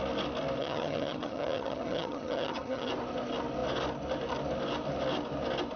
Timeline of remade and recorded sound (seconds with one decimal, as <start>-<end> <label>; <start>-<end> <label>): 0.0-0.6 recorded; 0.6-2.9 remade; 2.9-5.8 recorded

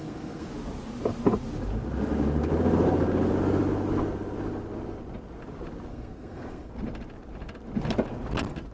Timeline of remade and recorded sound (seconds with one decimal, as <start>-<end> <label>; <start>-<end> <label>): 0.0-0.5 remade; 0.5-5.9 recorded; 5.9-6.7 remade; 6.7-8.7 recorded

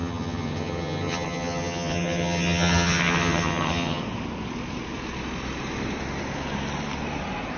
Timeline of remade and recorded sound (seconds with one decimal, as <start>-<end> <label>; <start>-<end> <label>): 0.0-4.0 remade; 4.0-7.6 recorded

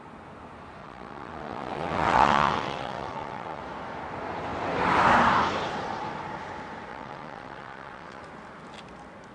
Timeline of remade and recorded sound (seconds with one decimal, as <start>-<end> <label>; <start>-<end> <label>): 0.0-0.8 recorded; 0.8-3.6 remade; 3.6-6.9 recorded; 6.9-8.2 remade; 8.2-9.3 recorded